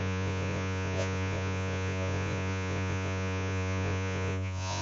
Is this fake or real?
fake